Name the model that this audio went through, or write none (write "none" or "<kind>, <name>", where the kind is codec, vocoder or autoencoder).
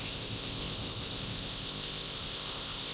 codec, ZipCodec